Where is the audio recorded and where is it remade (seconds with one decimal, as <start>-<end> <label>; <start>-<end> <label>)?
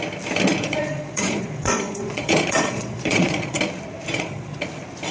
0.0-0.5 recorded; 0.5-3.6 remade; 3.6-4.1 recorded; 4.1-4.6 remade; 4.6-5.1 recorded